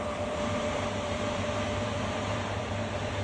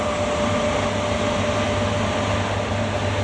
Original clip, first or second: second